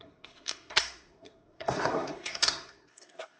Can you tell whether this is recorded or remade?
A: remade